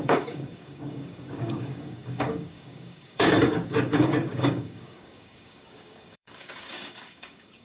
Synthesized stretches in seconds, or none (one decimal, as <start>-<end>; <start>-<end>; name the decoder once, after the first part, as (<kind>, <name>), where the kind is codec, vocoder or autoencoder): 0.0-7.6 (codec, DAC)